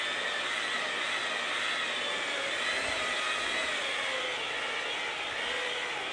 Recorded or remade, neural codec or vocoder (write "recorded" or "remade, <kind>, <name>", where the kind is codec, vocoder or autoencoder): recorded